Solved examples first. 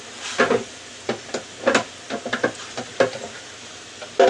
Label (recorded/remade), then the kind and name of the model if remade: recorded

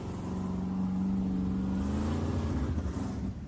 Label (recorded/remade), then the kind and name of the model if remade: recorded